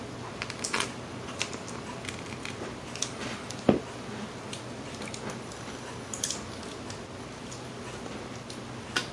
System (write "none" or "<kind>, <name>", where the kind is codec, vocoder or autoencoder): none